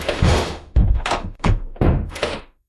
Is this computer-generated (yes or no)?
yes